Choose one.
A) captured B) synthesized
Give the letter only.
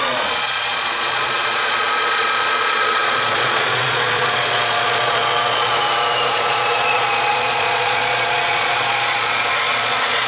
B